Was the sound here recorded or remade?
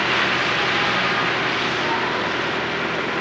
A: recorded